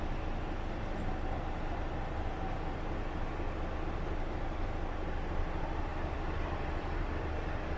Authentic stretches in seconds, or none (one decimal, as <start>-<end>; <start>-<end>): 0.0-5.9; 7.3-7.8